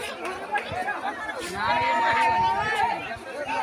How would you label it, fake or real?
real